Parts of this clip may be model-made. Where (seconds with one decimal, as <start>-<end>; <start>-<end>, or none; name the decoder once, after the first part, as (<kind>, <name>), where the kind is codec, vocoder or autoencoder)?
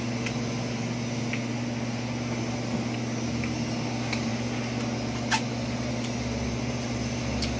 none